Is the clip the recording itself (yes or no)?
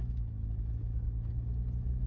yes